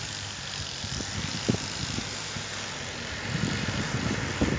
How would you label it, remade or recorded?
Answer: recorded